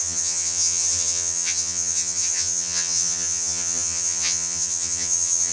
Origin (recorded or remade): remade